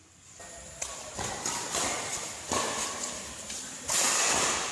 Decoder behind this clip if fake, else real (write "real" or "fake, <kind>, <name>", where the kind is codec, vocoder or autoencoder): real